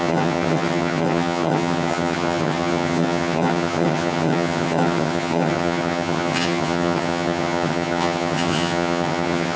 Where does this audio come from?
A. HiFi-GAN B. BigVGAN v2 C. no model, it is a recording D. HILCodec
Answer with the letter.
A